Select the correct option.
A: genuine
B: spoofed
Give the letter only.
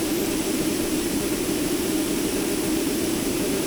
B